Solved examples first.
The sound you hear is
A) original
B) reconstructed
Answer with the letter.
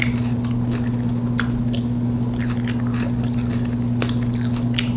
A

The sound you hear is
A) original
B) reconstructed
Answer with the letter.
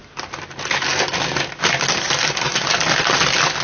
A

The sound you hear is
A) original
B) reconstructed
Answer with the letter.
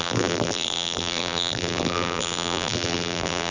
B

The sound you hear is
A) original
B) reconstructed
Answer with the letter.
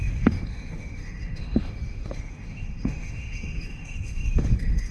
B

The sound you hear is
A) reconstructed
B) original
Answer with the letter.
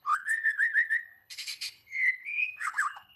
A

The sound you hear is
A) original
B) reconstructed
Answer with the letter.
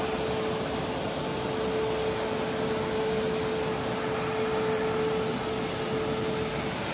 A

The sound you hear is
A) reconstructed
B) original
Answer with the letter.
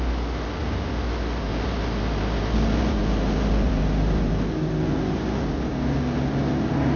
B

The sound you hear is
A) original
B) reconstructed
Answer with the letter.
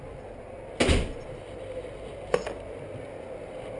A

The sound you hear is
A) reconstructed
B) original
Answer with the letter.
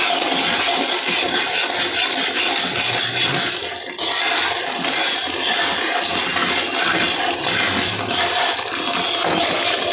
B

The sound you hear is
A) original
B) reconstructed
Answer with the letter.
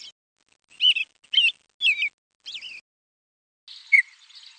A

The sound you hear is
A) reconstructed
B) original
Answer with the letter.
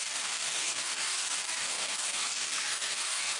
A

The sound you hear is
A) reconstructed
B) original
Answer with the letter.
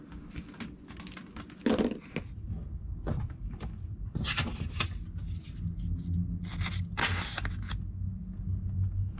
B